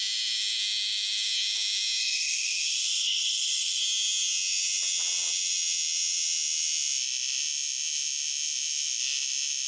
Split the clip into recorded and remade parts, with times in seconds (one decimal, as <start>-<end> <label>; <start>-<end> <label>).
0.0-2.0 recorded; 2.0-3.8 remade; 3.8-9.7 recorded